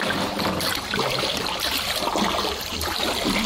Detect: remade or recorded recorded